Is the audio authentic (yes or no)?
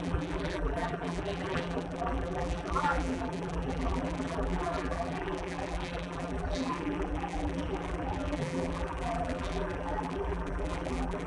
no